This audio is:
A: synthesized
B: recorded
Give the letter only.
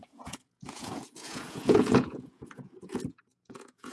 A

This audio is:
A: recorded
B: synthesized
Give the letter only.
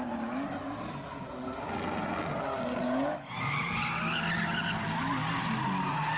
A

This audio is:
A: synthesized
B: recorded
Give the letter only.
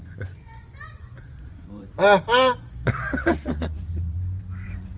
A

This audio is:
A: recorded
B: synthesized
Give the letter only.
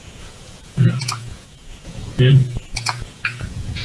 B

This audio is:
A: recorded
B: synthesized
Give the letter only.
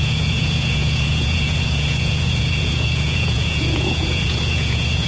B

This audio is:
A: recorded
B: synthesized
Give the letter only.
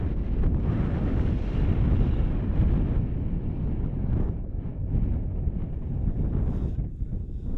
A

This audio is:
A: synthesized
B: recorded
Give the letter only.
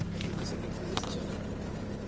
B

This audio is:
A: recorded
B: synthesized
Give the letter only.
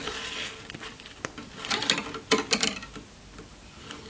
A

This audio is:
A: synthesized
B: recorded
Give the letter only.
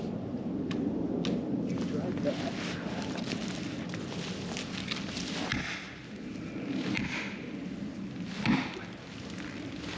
B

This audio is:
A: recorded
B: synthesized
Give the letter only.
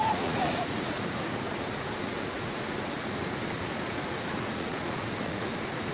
B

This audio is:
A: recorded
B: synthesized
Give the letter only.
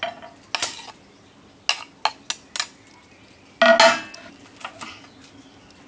A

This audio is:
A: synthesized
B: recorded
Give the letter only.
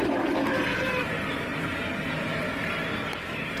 B